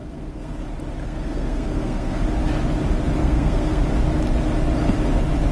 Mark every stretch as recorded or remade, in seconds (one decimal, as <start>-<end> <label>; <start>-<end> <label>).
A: 0.0-0.6 remade; 0.6-1.0 recorded; 1.0-2.2 remade; 2.2-3.2 recorded; 3.2-3.8 remade; 3.8-5.5 recorded